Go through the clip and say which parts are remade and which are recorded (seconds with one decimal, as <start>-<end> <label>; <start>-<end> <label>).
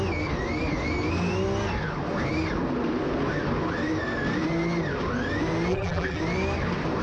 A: 0.0-5.7 recorded; 5.7-6.2 remade; 6.2-7.0 recorded